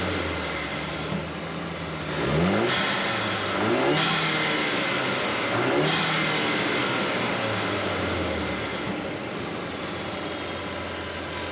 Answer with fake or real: real